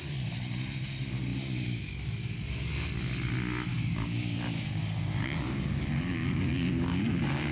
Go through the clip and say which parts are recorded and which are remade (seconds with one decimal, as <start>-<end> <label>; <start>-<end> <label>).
0.0-3.7 recorded; 3.7-7.5 remade